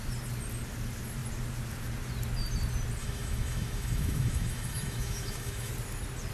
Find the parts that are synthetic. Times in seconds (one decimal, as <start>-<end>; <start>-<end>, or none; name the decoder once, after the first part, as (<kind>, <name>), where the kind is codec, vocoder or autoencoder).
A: 3.0-5.7 (autoencoder, DAC-VAE)